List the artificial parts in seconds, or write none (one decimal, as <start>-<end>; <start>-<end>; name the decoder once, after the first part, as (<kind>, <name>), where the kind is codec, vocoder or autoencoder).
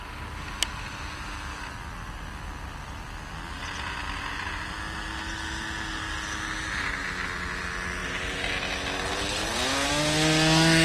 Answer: 8.0-8.5 (vocoder, BigVGAN v2)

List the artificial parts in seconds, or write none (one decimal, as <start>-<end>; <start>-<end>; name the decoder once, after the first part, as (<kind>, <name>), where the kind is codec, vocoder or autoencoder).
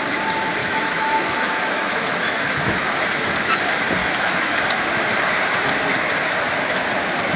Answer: 0.6-3.0 (autoencoder, DAC-VAE); 4.0-4.6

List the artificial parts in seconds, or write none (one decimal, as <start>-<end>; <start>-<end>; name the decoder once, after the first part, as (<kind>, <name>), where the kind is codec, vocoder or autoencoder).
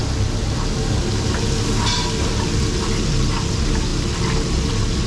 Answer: none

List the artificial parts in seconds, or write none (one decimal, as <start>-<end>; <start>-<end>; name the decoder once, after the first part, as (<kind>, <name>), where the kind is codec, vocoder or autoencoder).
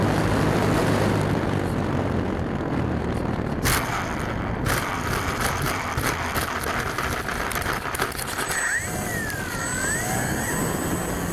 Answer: none